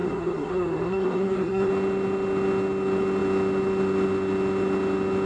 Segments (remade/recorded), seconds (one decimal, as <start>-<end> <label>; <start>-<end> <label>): 0.0-1.7 remade; 1.7-5.3 recorded